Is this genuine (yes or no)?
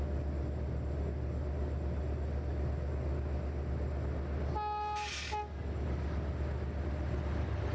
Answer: yes